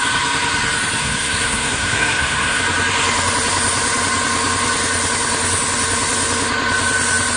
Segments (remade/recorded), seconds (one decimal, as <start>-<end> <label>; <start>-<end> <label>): 0.0-1.0 recorded; 1.0-2.6 remade; 2.6-7.4 recorded